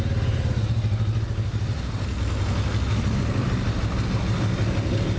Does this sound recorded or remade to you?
recorded